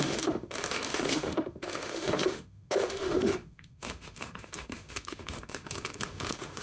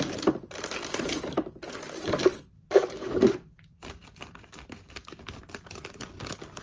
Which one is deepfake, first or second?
first